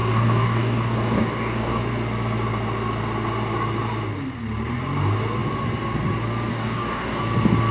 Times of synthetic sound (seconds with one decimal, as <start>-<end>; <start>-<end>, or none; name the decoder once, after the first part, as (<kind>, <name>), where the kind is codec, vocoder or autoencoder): 0.0-1.8 (codec, DAC); 6.5-7.2